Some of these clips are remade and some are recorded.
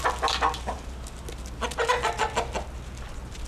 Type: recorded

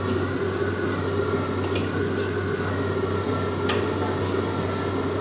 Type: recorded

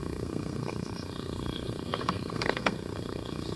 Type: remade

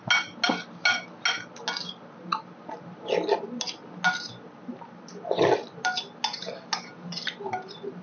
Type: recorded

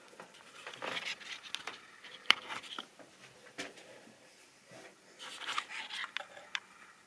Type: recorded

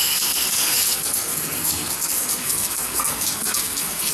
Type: remade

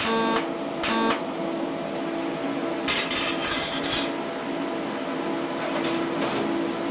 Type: recorded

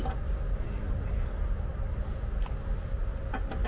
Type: recorded